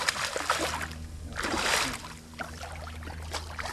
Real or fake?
real